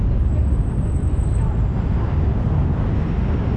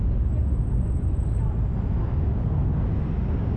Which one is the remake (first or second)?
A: first